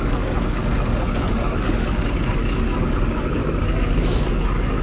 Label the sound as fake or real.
fake